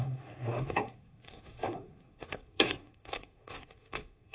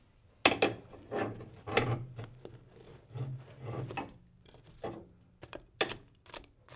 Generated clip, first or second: first